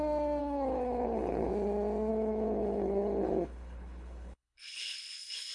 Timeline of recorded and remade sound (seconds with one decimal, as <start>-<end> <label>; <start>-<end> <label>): 0.0-0.4 recorded; 0.4-1.5 remade; 1.5-2.1 recorded; 2.1-5.5 remade